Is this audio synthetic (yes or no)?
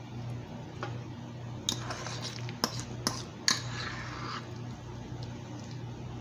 no